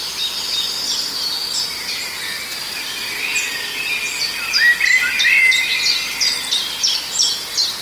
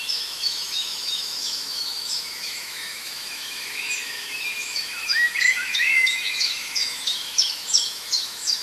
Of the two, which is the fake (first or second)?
second